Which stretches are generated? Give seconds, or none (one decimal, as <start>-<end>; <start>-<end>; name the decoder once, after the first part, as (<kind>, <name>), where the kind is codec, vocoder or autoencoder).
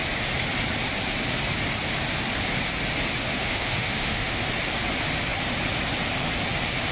3.2-4.5 (autoencoder, DAC-VAE)